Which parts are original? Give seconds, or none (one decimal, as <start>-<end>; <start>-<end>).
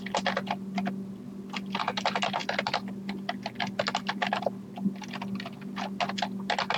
0.0-6.8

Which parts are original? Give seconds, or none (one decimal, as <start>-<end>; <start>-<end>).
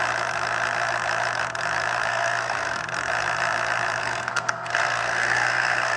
0.0-2.1; 2.8-4.0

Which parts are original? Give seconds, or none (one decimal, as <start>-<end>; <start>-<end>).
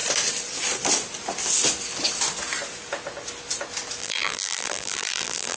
0.0-4.0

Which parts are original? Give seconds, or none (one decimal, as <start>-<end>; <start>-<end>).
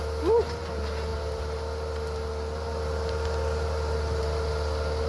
0.0-5.1